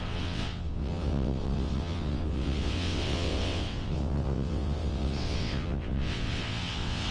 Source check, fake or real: fake